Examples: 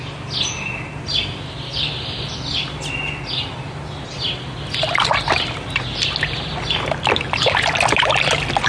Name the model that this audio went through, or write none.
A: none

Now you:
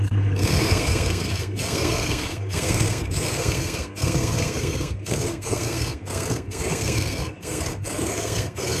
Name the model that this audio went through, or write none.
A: codec, SNAC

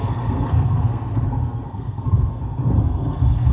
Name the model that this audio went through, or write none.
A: codec, SNAC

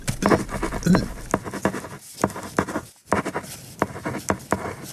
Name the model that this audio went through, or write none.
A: none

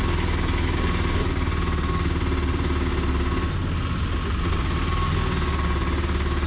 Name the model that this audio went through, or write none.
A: none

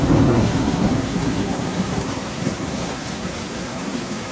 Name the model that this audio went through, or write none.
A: codec, SNAC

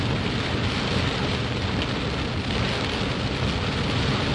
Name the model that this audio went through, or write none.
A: none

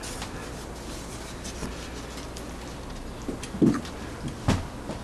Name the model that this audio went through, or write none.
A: none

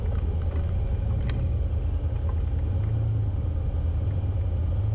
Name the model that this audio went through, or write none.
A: none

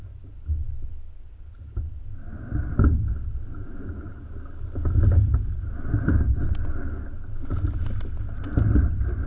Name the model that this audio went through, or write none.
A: none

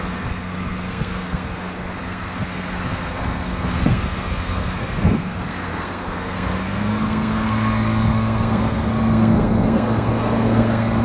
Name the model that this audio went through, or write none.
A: codec, SNAC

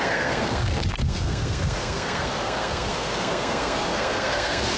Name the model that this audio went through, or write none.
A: codec, SNAC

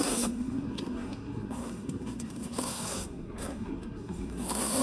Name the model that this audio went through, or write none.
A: codec, SNAC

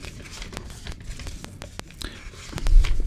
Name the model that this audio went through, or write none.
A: none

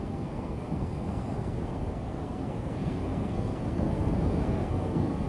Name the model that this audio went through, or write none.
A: codec, SNAC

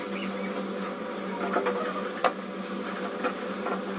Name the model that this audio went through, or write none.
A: none